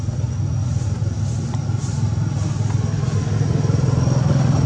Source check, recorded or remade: recorded